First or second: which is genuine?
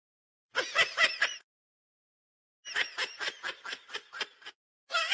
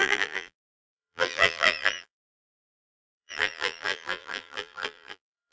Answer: first